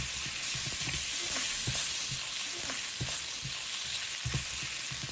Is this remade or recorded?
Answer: recorded